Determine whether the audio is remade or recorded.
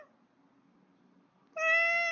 recorded